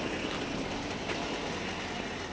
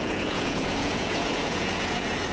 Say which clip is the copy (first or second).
second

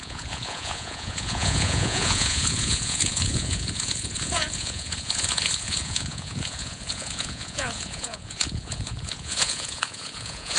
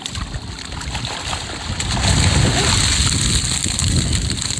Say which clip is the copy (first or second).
first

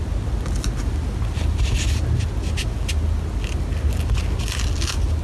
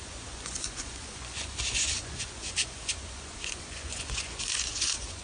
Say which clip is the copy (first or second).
second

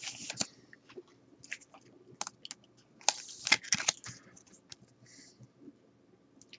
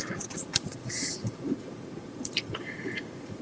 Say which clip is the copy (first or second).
second